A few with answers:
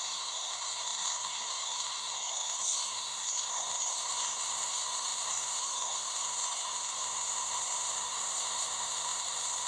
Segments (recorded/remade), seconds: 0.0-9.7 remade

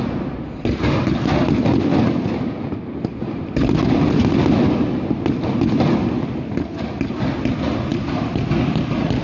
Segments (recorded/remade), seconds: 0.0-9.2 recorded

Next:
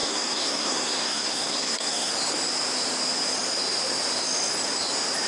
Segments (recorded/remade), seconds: 0.0-2.1 remade; 2.1-5.3 recorded

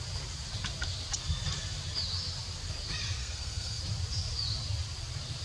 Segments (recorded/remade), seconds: 0.0-3.2 recorded; 3.2-3.8 remade; 3.8-5.4 recorded